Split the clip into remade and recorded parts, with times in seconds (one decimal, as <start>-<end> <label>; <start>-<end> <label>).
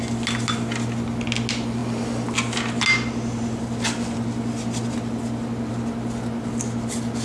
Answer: 0.0-7.2 recorded